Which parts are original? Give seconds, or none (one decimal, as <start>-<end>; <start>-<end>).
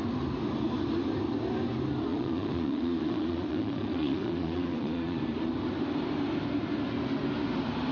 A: 0.0-2.1; 5.2-7.9